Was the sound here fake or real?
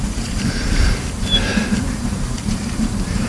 fake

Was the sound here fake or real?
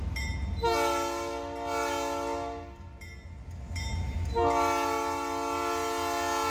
real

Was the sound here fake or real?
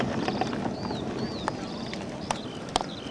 real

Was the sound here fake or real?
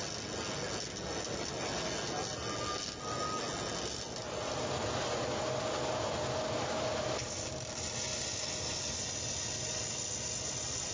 real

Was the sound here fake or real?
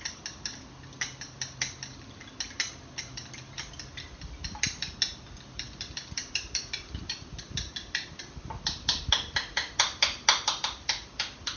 real